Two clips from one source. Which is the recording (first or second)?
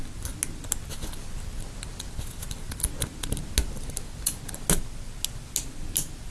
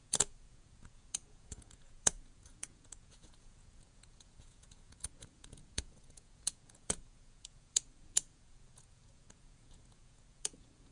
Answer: first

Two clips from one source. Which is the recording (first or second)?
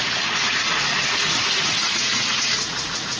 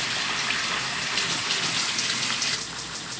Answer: second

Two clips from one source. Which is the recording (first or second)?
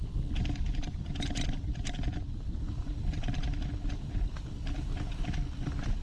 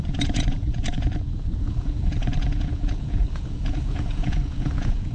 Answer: first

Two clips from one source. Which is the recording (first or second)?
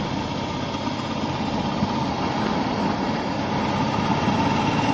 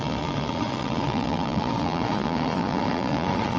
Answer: first